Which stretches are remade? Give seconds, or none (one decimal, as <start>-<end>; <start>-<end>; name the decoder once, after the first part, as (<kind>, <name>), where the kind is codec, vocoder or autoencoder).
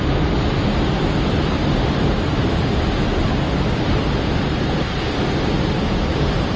none